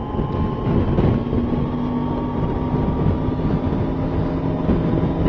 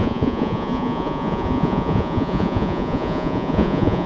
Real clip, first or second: first